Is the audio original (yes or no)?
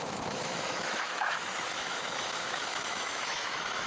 no